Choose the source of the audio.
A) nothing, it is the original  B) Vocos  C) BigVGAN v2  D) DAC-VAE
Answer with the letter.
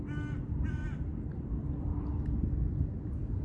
A